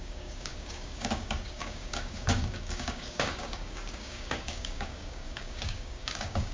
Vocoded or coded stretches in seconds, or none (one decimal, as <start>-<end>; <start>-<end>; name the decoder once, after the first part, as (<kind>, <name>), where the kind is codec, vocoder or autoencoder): 0.0-6.5 (codec, DAC)